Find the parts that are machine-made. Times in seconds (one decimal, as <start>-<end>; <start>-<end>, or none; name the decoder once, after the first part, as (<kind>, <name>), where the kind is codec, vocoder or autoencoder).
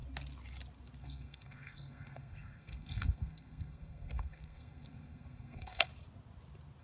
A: 1.0-5.9 (codec, SNAC)